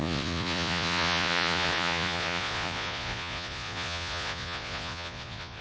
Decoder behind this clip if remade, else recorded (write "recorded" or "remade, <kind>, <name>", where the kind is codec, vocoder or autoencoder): remade, vocoder, Vocos